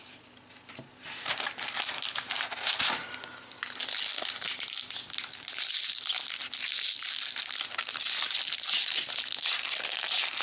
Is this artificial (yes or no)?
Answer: no